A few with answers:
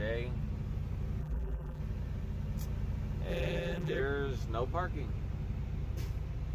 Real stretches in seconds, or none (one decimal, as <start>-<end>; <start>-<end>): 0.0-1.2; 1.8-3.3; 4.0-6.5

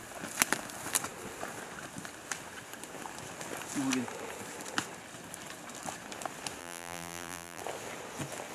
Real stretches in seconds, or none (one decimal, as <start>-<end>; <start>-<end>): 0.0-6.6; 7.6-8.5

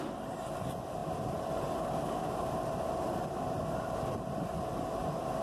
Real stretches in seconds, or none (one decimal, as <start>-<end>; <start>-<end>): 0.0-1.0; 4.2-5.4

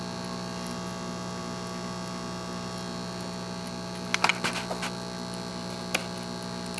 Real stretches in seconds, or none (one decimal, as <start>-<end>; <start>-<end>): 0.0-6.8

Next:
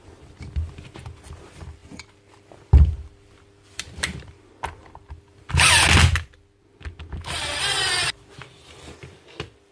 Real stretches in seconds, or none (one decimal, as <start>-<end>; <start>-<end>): 0.0-1.8; 5.7-8.0; 9.1-9.7

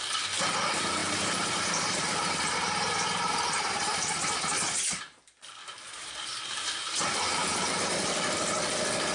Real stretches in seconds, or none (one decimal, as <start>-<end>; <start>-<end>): 0.0-1.0; 5.0-5.6; 7.4-9.1

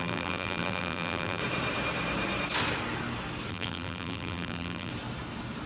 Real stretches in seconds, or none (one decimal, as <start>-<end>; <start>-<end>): 1.4-3.5; 4.9-5.7